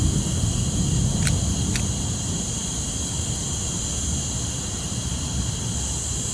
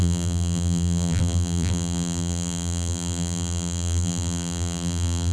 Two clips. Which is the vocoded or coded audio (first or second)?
second